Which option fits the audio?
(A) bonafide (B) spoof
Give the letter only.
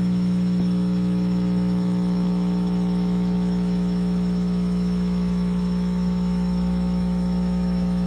B